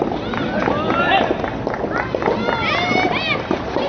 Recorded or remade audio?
recorded